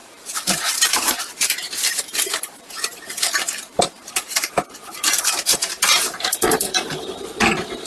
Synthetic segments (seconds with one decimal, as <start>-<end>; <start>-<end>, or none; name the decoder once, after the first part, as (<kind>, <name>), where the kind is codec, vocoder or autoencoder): 0.0-7.9 (vocoder, BigVGAN v2)